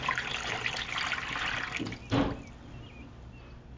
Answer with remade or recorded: recorded